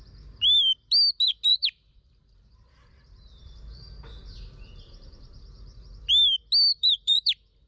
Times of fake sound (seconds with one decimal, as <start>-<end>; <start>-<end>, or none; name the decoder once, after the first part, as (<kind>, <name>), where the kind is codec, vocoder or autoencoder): 1.5-6.1 (vocoder, BigVGAN v2); 6.7-7.7